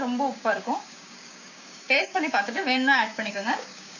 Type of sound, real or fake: fake